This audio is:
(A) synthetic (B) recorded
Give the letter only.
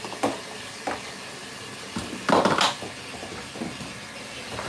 B